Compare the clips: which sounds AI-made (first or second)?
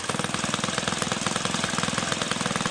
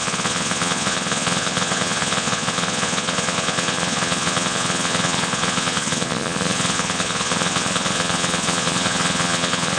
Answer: second